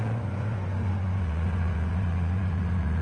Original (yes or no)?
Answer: no